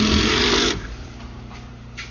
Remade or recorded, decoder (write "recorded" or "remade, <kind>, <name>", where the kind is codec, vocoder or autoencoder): remade, vocoder, BigVGAN v2